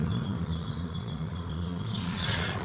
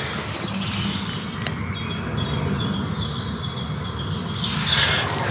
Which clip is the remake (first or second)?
first